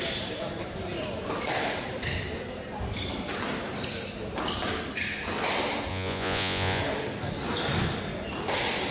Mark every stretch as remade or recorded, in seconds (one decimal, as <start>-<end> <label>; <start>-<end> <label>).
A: 0.0-5.9 recorded; 5.9-6.8 remade; 6.8-8.9 recorded